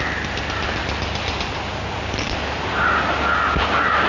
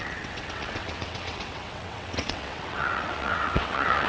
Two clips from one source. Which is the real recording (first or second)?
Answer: first